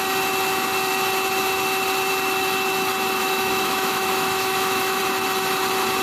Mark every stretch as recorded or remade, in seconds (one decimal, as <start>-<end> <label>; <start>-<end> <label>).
0.0-3.2 recorded; 3.2-5.0 remade; 5.0-6.0 recorded